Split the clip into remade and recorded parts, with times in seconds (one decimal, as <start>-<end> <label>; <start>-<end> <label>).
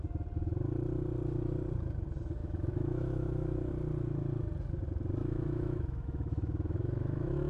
0.0-2.4 recorded; 2.4-3.7 remade; 3.7-5.2 recorded; 5.2-7.5 remade